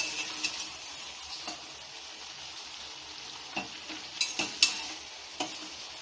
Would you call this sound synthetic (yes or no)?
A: no